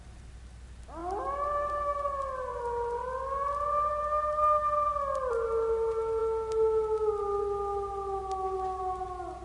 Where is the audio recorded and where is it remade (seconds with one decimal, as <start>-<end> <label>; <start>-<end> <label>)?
0.0-9.4 recorded